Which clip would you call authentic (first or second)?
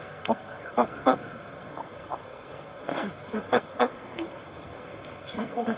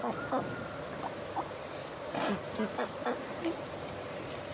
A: second